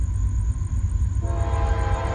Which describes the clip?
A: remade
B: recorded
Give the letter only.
B